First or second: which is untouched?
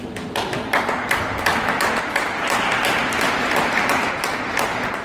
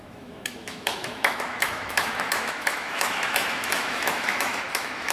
first